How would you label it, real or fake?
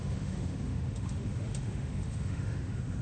fake